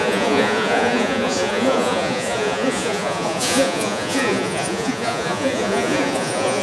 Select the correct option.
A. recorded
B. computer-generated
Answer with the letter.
B